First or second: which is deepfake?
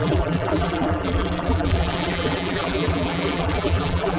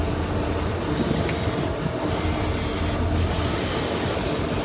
first